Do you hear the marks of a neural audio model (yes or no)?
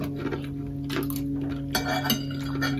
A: no